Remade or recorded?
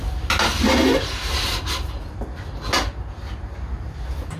recorded